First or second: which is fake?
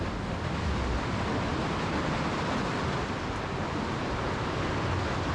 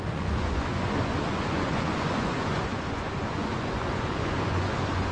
second